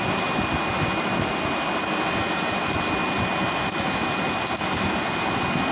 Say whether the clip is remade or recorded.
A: recorded